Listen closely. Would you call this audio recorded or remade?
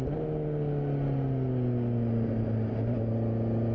recorded